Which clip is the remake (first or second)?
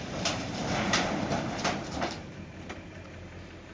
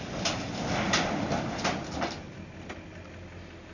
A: first